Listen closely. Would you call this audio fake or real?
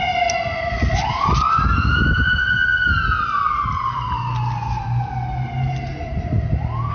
real